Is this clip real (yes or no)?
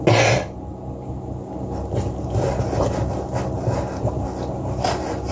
yes